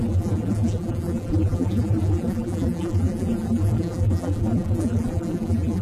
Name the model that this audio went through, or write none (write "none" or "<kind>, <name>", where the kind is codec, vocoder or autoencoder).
vocoder, BigVGAN v2